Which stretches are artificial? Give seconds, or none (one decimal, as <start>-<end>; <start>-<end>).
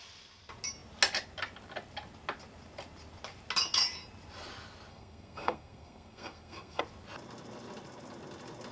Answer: 4.9-6.8